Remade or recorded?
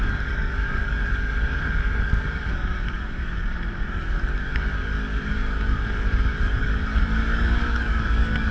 remade